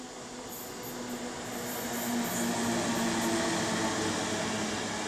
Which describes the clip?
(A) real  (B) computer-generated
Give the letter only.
A